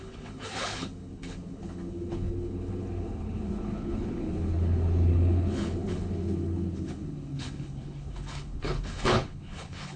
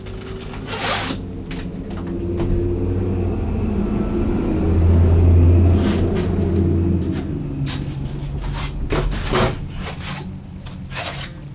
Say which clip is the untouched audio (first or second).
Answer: second